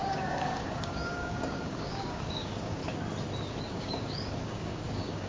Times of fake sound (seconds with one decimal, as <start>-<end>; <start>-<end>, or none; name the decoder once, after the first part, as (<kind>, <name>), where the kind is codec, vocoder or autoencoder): 0.0-2.8 (codec, DAC); 3.7-5.3